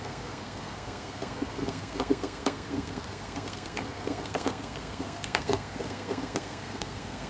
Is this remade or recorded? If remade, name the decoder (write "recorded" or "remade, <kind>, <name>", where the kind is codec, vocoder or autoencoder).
remade, codec, SNAC